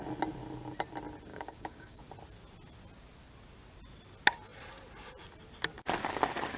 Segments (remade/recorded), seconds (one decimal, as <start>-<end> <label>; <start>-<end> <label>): 0.0-1.3 recorded; 1.3-2.0 remade; 2.0-6.6 recorded